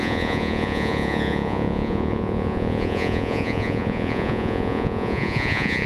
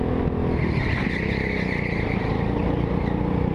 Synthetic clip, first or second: first